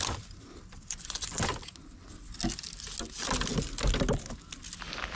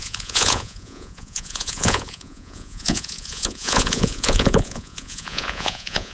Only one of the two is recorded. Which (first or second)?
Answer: first